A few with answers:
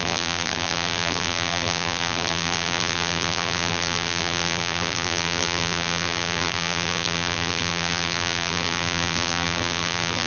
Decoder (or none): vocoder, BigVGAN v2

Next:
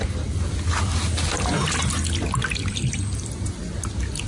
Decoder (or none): none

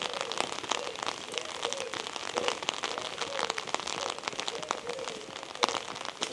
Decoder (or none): none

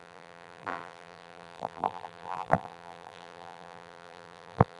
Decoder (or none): vocoder, BigVGAN v2